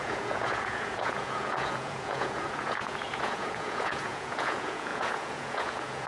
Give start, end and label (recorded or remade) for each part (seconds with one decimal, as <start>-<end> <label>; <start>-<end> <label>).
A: 0.0-6.1 remade